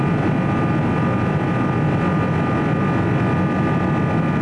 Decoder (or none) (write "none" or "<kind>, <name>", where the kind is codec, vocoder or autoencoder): none